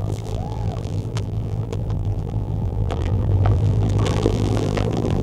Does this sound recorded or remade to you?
remade